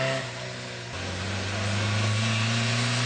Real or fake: real